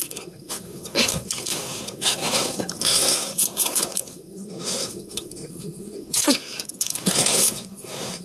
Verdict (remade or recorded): remade